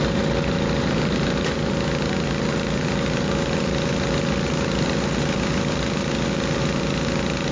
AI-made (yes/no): no